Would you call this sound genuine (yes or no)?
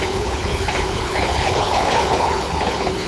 no